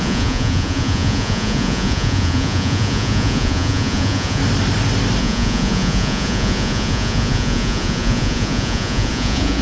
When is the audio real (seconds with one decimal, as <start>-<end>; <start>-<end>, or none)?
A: 4.4-5.2